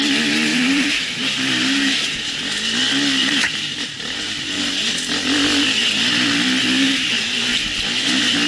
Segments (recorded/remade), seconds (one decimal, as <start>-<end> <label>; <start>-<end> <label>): 0.0-0.5 recorded; 0.5-2.4 remade; 2.4-3.2 recorded; 3.2-4.9 remade; 4.9-8.5 recorded